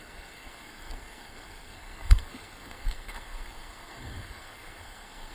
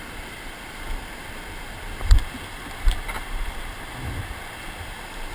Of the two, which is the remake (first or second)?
first